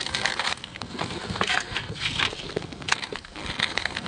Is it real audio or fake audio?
fake